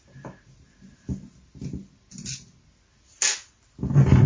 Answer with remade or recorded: recorded